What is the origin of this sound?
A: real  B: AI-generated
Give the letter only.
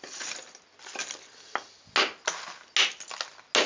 A